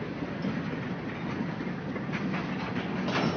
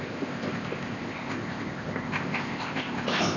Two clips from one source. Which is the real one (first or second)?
first